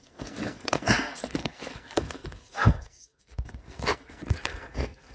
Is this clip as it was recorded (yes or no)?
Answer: no